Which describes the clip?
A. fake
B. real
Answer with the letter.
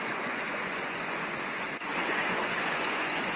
A